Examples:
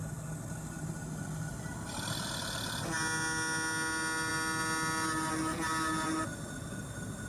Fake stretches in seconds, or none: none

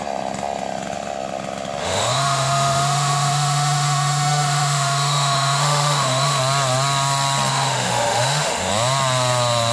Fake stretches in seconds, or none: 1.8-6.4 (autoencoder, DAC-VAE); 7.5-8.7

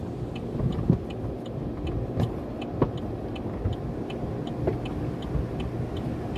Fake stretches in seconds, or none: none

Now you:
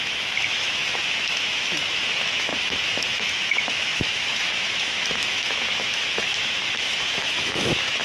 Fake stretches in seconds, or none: 0.0-8.0 (autoencoder, DAC-VAE)

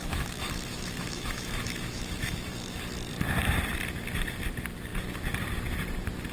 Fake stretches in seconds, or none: 0.0-2.8 (autoencoder, DAC-VAE)

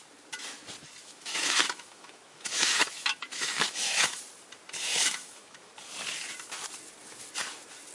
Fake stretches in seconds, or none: 1.0-4.2 (autoencoder, DAC-VAE); 4.9-5.7

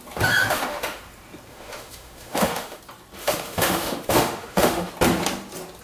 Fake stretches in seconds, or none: 0.4-1.0 (autoencoder, DAC-VAE); 1.5-2.8; 3.2-4.9